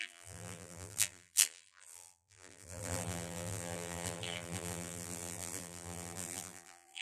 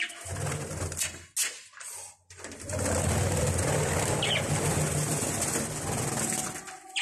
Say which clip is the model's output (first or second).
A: first